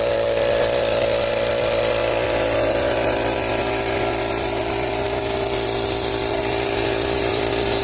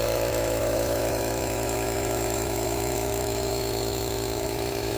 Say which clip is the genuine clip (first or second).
first